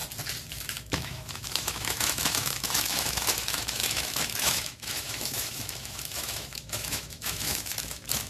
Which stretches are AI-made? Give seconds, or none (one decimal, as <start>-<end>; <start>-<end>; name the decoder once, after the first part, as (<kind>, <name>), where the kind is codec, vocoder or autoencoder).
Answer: 0.5-8.3 (autoencoder, DAC-VAE)